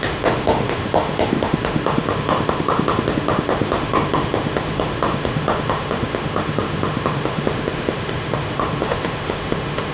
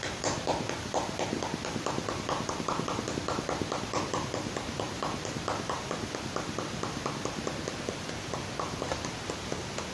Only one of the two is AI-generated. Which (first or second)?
first